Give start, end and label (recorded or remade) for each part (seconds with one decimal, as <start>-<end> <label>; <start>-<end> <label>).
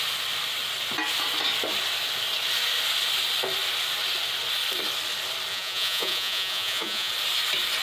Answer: 0.0-5.5 recorded; 5.5-7.1 remade; 7.1-7.8 recorded